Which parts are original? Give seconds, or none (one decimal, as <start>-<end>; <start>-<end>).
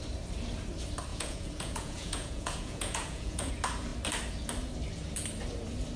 0.0-1.1; 3.5-6.0